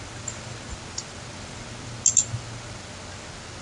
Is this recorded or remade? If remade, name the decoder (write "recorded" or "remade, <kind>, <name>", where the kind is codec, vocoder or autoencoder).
recorded